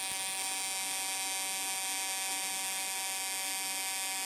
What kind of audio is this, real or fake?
real